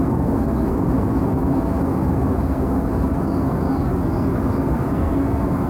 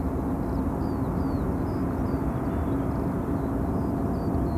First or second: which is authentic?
second